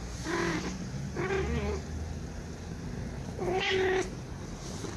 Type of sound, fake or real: real